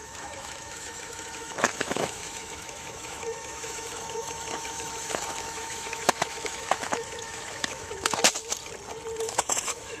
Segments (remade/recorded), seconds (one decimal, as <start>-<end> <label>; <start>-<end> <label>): 0.0-8.2 remade; 8.2-9.2 recorded; 9.2-10.0 remade